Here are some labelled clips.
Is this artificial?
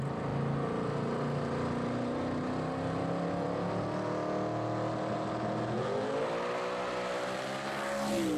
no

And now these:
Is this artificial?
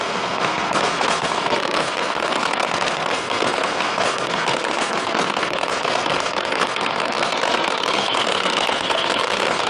yes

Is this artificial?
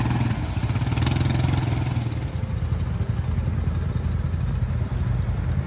no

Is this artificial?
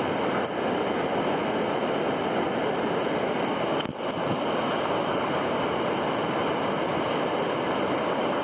no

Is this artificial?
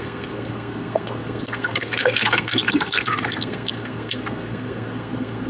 yes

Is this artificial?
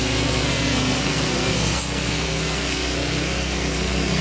yes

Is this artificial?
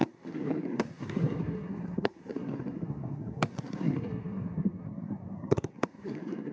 yes